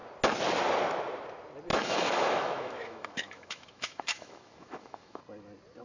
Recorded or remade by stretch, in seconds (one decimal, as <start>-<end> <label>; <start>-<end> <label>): 0.0-1.7 recorded; 1.7-5.2 remade; 5.2-5.8 recorded